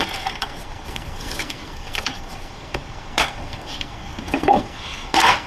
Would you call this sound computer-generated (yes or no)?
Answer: yes